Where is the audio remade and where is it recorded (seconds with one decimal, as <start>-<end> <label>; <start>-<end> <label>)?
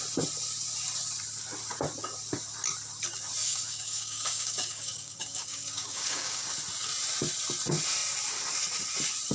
0.0-3.4 recorded; 3.4-6.5 remade; 6.5-9.3 recorded